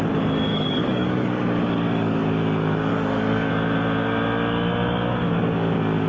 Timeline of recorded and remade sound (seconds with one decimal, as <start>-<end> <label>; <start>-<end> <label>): 0.0-0.5 recorded; 0.5-2.3 remade; 2.3-2.9 recorded; 2.9-3.5 remade; 3.5-6.1 recorded